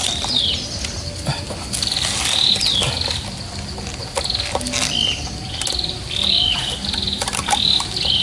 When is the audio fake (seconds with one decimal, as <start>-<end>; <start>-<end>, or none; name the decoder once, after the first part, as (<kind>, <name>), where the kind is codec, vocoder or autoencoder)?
none